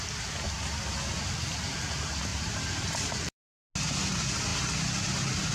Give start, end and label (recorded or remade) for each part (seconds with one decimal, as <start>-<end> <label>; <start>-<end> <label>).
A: 0.0-2.3 recorded; 2.3-3.4 remade; 3.4-5.5 recorded